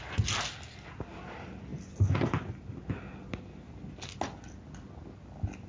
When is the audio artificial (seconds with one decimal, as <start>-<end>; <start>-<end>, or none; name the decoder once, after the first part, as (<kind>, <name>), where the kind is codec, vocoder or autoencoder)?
none